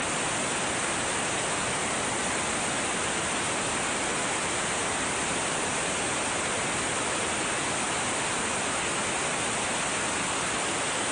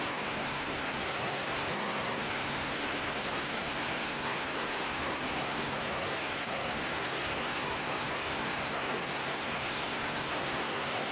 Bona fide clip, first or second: first